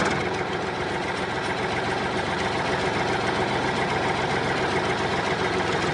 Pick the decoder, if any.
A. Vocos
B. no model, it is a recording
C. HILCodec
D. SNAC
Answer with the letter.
B